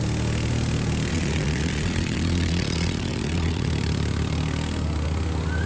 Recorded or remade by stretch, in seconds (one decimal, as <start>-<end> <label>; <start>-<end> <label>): 0.0-1.1 recorded; 1.1-3.7 remade; 3.7-5.7 recorded